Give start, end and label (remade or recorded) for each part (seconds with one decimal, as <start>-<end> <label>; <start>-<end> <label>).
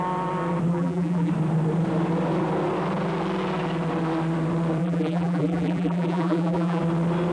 0.0-0.7 recorded; 0.7-1.3 remade; 1.3-4.8 recorded; 4.8-6.8 remade; 6.8-7.3 recorded